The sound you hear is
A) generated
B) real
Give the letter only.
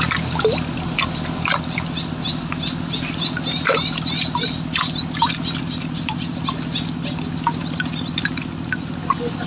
B